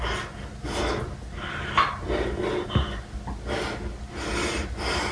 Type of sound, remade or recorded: recorded